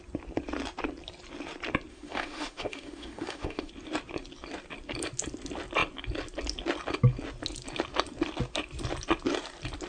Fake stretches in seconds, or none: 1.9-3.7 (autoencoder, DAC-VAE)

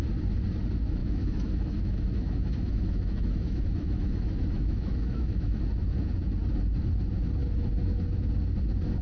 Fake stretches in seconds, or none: 1.0-5.6 (autoencoder, DAC-VAE)

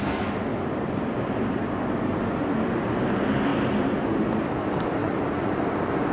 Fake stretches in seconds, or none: 5.0-5.6 (vocoder, Vocos)

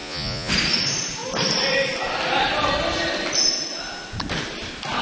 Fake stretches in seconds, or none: 0.0-0.5 (vocoder, Vocos)

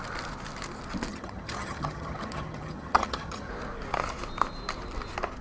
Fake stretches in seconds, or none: 1.1-3.5 (vocoder, HiFi-GAN)

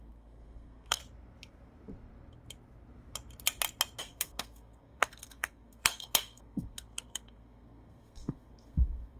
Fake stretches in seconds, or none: 0.0-1.0 (codec, SNAC); 4.0-9.2

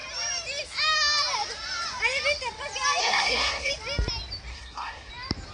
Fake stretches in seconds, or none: 3.0-3.7 (codec, SNAC); 4.5-5.1

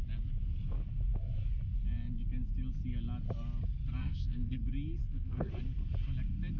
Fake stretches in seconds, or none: 4.0-4.6 (codec, SNAC); 5.0-5.5